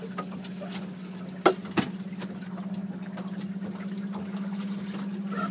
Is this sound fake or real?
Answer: real